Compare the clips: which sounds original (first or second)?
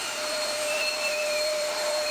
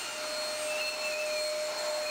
second